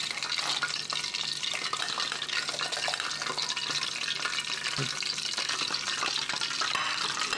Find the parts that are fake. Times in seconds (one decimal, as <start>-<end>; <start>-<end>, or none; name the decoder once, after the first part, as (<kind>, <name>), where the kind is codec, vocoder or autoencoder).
none